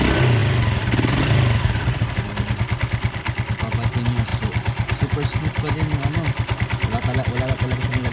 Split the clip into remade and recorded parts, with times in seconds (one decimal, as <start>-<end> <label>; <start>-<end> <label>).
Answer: 0.0-8.1 recorded